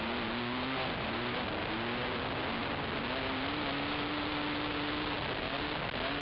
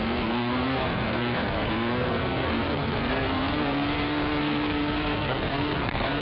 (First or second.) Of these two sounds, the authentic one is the first